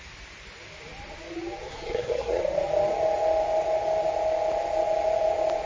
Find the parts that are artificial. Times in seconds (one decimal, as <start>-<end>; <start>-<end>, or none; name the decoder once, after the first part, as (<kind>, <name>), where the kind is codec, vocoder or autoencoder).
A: 1.7-2.4 (codec, SNAC)